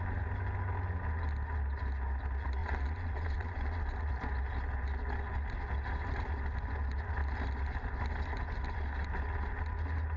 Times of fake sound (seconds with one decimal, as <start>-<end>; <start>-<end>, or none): 2.6-4.1